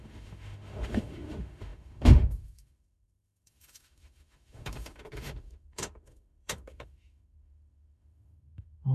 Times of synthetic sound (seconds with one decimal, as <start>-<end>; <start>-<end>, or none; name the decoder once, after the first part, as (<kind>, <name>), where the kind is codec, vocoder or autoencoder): 0.0-8.9 (autoencoder, DAC-VAE)